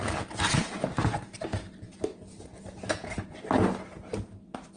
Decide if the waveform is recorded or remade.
recorded